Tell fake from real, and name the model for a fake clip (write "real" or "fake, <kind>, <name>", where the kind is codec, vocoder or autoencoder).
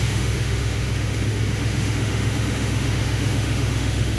fake, autoencoder, DAC-VAE